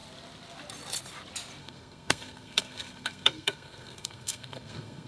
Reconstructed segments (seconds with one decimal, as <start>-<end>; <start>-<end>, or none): 1.6-5.1